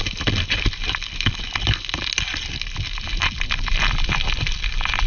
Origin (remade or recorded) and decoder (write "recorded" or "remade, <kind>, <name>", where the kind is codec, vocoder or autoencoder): recorded